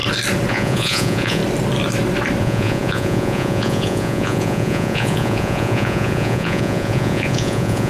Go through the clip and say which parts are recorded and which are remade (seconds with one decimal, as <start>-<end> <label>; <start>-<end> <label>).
0.0-0.5 recorded; 0.5-1.4 remade; 1.4-2.4 recorded; 2.4-7.9 remade